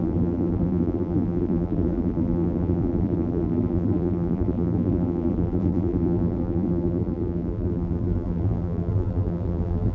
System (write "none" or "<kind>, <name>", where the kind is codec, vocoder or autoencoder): vocoder, BigVGAN v2